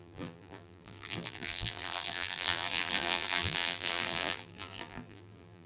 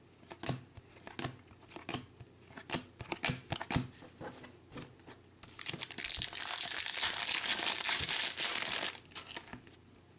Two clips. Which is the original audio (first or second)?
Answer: second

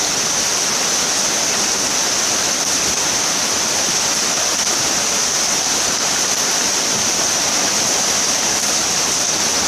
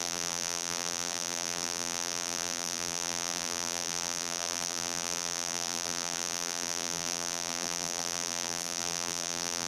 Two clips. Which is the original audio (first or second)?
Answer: first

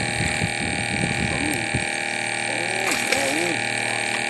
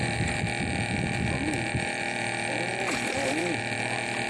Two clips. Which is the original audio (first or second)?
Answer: first